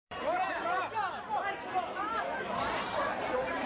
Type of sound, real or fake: fake